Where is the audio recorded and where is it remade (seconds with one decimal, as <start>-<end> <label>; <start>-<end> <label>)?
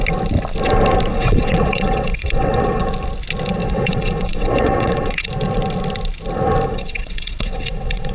0.0-1.1 recorded; 1.1-2.9 remade; 2.9-3.6 recorded; 3.6-5.3 remade; 5.3-6.7 recorded; 6.7-8.1 remade